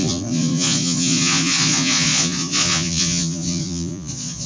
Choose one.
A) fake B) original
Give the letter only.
A